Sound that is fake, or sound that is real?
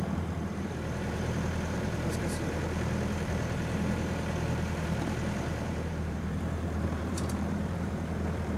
fake